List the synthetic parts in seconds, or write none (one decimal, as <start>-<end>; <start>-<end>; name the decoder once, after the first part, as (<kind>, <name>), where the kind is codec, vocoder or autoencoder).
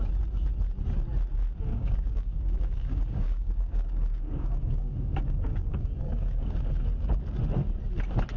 1.7-6.7 (codec, DAC)